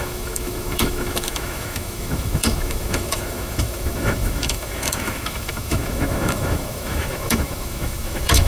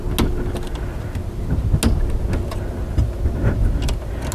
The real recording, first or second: second